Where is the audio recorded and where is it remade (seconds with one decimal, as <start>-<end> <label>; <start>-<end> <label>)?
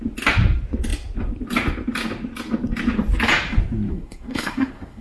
0.0-3.9 recorded; 3.9-5.0 remade